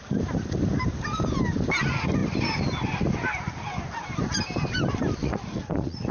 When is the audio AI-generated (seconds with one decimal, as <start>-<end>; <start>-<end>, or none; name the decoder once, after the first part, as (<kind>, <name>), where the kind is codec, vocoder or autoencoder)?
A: 5.2-6.1 (vocoder, Vocos)